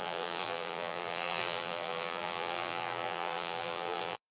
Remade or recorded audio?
remade